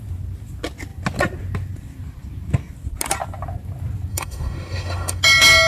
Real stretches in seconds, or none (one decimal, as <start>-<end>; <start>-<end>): 0.0-4.1; 5.2-5.7